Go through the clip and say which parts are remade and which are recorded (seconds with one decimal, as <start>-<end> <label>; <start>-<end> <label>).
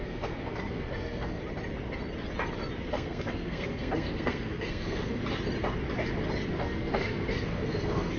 0.0-1.4 remade; 1.4-2.9 recorded; 2.9-5.2 remade; 5.2-6.5 recorded; 6.5-8.2 remade